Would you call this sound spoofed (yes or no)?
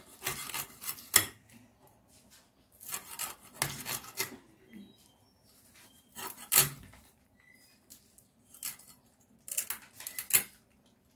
no